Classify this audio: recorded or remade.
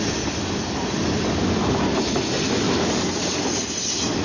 recorded